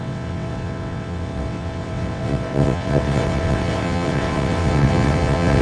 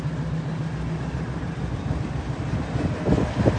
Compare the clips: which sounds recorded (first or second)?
second